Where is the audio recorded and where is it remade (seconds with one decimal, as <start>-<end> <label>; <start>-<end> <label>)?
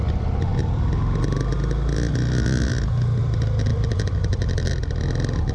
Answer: 0.0-3.7 recorded; 3.7-4.7 remade; 4.7-5.5 recorded